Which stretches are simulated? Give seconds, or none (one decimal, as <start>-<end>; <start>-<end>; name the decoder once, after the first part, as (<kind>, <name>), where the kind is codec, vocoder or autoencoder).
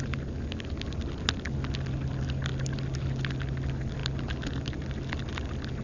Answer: none